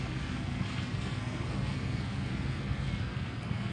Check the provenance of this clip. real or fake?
fake